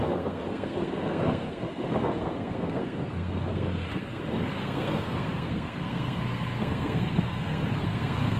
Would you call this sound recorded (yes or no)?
no